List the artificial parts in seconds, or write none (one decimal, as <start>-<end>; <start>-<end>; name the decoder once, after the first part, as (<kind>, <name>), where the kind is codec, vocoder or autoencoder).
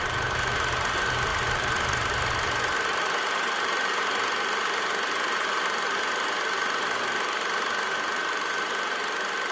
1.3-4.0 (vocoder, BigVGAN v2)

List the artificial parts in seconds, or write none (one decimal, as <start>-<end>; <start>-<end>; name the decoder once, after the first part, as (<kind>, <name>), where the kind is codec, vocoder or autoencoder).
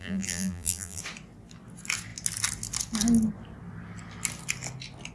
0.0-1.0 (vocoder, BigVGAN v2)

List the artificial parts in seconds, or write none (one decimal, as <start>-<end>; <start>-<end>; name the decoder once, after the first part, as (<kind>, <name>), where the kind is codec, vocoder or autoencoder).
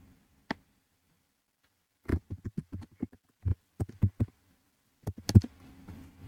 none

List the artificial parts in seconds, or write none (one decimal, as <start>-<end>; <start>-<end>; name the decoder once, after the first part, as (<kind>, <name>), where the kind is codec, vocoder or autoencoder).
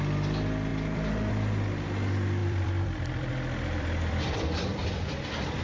0.7-1.3 (vocoder, BigVGAN v2); 2.4-5.6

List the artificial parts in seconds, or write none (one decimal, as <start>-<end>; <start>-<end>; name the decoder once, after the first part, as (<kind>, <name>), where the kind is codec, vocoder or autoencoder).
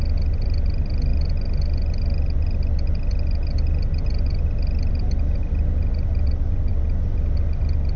none